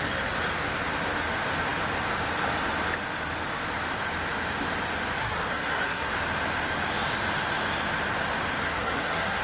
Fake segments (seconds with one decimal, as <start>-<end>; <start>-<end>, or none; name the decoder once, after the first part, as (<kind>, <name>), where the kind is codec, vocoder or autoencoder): 5.2-6.1 (codec, SNAC); 8.6-9.4